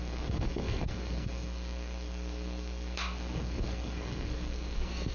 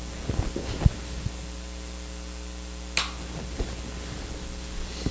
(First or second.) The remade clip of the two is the first